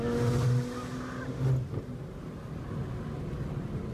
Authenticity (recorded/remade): recorded